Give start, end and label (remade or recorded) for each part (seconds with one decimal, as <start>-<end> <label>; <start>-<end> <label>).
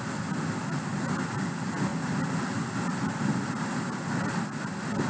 0.0-5.1 recorded